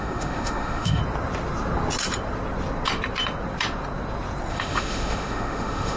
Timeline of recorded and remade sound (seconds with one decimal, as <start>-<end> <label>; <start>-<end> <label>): 0.0-1.0 remade; 1.0-4.5 recorded; 4.5-6.0 remade